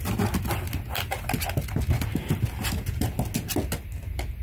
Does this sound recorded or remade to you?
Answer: recorded